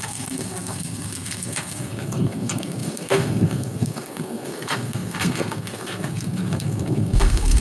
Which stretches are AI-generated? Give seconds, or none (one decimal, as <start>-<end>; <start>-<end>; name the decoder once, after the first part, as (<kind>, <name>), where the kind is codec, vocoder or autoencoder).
0.0-7.6 (codec, SNAC)